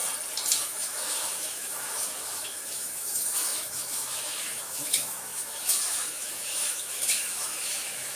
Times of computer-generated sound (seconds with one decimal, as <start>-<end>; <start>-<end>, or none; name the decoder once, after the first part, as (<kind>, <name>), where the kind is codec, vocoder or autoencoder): 0.6-8.2 (autoencoder, DAC-VAE)